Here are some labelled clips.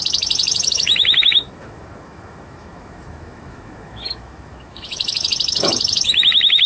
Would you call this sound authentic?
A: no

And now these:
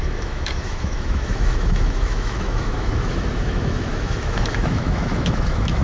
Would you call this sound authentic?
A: no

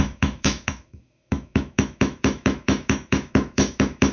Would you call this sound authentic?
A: no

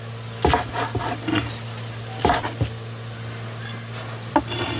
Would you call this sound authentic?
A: yes